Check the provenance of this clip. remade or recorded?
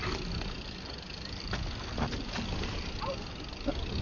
recorded